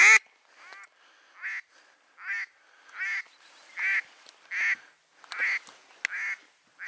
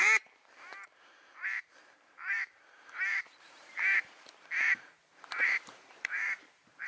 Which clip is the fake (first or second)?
second